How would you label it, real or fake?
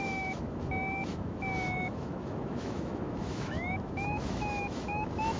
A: fake